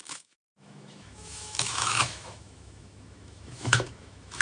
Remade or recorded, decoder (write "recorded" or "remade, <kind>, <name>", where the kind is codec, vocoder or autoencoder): remade, autoencoder, DAC-VAE